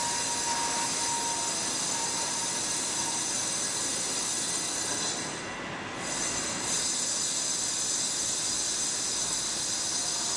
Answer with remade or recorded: recorded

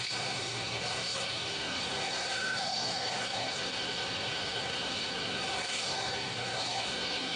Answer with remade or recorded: remade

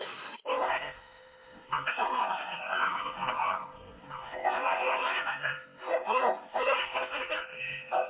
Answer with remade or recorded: remade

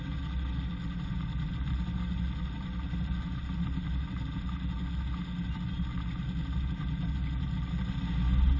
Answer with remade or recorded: recorded